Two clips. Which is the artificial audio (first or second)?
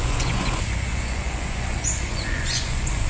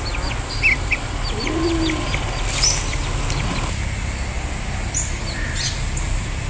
first